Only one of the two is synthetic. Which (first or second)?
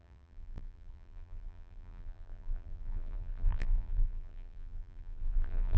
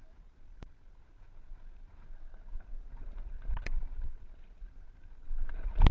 first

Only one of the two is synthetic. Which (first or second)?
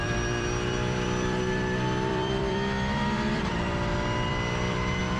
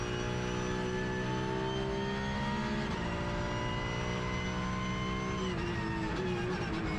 first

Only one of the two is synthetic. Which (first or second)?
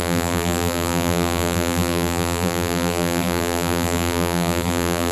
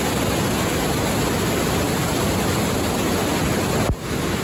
first